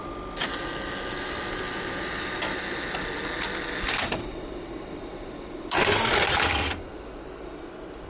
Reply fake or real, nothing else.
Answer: real